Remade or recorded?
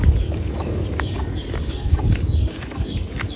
remade